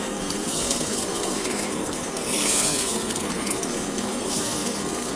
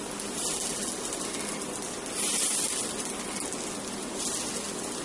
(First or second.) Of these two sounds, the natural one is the second